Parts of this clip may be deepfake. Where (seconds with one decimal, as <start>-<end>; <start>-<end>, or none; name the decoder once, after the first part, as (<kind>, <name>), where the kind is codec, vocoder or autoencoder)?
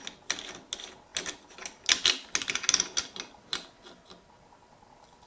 none